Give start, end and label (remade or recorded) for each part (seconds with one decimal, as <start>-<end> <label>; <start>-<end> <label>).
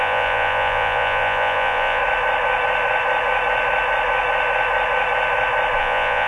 0.0-2.0 remade; 2.0-5.8 recorded; 5.8-6.3 remade